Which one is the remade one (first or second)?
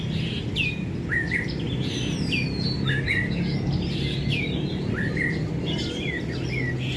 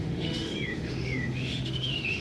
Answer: second